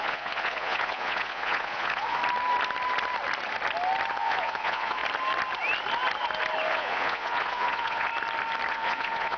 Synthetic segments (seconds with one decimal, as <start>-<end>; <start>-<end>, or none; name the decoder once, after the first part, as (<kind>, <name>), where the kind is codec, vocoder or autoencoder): 0.0-2.2 (vocoder, Vocos); 4.1-5.0; 6.7-8.1; 8.7-9.4